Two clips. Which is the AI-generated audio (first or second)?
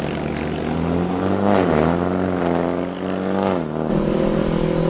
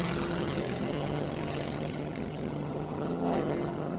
second